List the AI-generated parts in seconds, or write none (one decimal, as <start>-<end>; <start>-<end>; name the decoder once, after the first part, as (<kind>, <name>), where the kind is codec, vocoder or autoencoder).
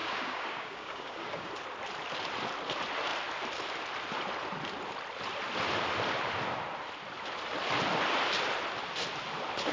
0.0-1.5 (codec, DAC)